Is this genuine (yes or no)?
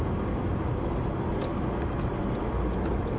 yes